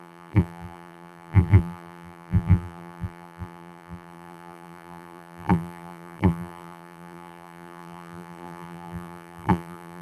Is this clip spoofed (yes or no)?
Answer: yes